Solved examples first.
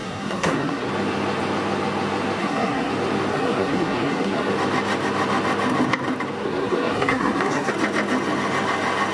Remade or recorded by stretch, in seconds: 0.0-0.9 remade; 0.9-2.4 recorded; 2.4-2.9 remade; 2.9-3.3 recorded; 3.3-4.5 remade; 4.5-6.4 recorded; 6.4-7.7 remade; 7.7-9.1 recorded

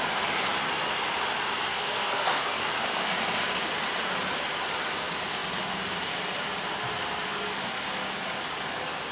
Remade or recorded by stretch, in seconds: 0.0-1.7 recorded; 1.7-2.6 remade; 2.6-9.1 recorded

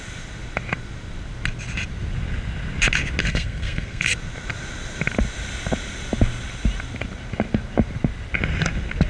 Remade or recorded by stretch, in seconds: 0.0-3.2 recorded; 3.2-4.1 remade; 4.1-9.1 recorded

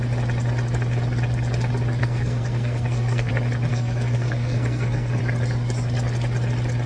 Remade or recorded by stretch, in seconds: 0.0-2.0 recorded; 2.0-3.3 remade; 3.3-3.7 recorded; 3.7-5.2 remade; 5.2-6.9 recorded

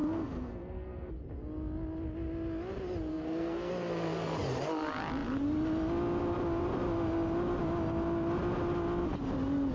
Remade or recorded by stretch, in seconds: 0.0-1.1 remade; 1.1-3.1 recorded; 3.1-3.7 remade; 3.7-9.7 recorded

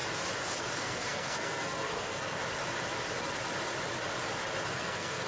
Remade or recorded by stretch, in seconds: 0.0-0.6 recorded; 0.6-2.4 remade; 2.4-4.7 recorded; 4.7-5.3 remade

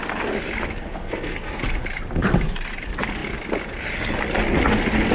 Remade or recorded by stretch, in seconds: 0.0-0.8 recorded; 0.8-1.6 remade; 1.6-5.1 recorded